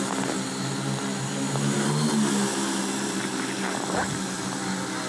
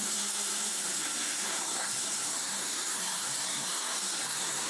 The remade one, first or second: second